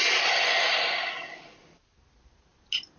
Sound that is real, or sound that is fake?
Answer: real